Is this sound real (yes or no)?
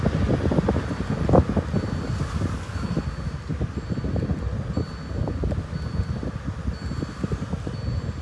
yes